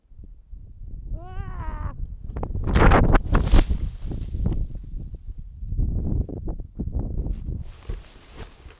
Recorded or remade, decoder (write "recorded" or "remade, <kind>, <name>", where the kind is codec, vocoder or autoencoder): recorded